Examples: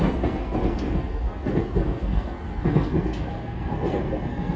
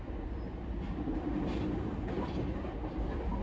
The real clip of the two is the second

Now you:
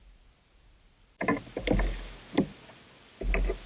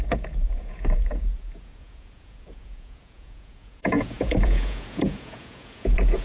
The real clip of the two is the first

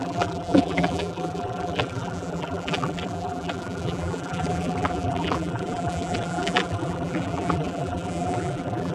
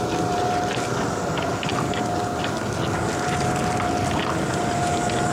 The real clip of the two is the second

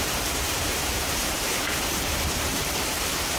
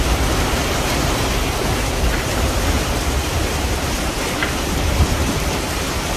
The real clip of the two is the second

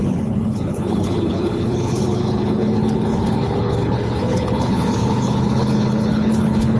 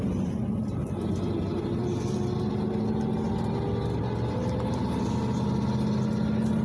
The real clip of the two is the second